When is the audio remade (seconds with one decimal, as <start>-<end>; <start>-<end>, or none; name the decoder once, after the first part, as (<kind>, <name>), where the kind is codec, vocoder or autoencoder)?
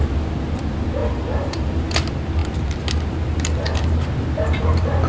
1.0-1.9 (vocoder, BigVGAN v2)